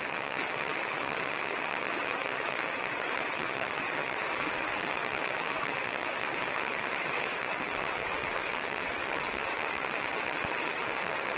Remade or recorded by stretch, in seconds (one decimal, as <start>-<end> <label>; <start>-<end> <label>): 0.0-11.4 remade